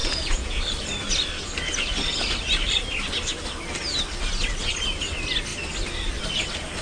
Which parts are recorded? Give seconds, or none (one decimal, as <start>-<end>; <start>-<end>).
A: 0.6-6.8

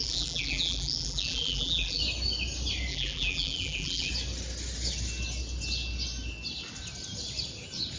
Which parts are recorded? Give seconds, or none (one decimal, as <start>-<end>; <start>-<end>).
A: 2.0-2.9; 4.1-8.0

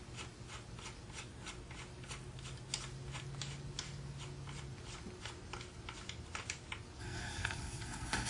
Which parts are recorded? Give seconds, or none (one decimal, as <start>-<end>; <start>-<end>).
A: 0.0-7.0

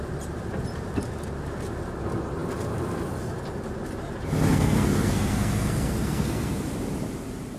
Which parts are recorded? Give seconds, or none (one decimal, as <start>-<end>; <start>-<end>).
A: 0.0-4.5; 6.6-7.6